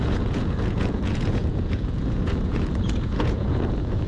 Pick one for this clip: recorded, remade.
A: remade